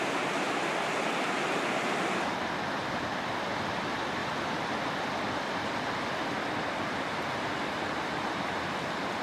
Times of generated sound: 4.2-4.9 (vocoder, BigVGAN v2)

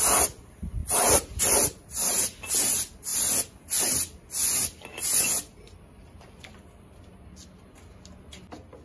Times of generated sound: none